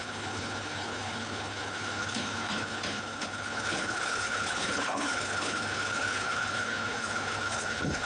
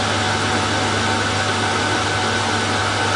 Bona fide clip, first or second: second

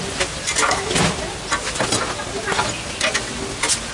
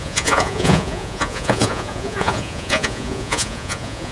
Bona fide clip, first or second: first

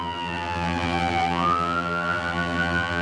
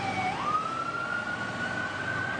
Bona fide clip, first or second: second